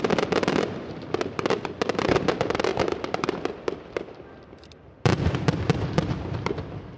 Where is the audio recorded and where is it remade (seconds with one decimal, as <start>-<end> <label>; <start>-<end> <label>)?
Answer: 0.0-7.0 remade